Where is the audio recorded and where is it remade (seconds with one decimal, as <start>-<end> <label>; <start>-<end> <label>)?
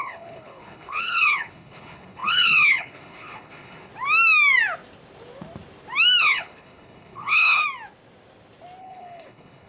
0.0-3.9 remade; 3.9-6.2 recorded; 6.2-7.6 remade; 7.6-8.8 recorded; 8.8-9.7 remade